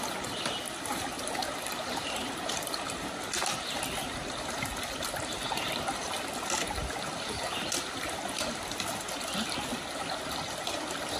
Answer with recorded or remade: recorded